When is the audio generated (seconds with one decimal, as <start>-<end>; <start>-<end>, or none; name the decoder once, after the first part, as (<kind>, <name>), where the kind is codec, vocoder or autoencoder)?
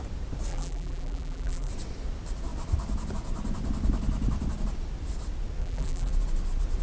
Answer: 0.5-1.7 (vocoder, BigVGAN v2); 5.6-6.1